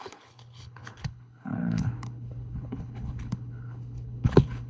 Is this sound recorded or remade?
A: remade